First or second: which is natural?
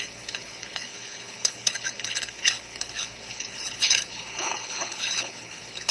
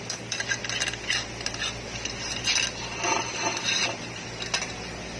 second